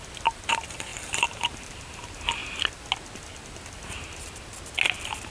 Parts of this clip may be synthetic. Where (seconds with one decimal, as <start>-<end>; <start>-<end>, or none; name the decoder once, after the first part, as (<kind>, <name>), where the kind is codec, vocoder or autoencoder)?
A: 0.9-1.7 (vocoder, BigVGAN v2)